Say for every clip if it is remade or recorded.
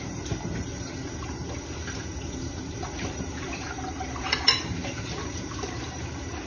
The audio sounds remade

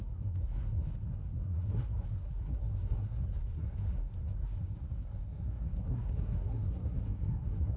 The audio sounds remade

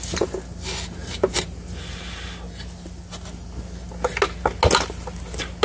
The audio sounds recorded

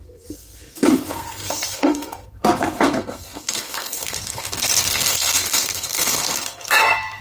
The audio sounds remade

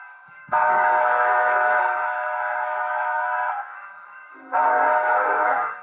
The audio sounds remade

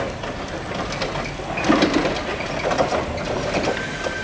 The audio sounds recorded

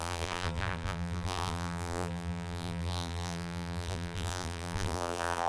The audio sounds remade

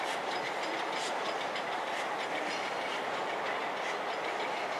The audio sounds recorded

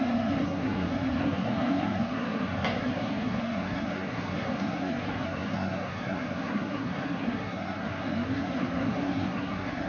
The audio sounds remade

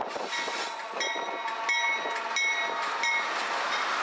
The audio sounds recorded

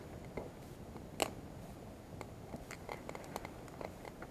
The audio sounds recorded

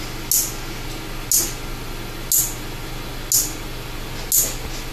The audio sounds recorded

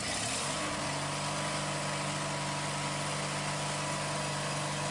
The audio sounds recorded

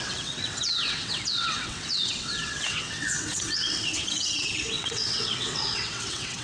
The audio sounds remade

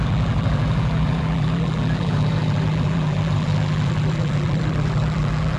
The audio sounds remade